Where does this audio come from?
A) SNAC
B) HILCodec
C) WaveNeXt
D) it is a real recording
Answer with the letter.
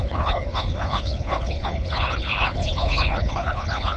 B